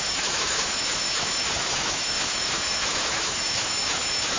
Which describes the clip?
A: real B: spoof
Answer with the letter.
B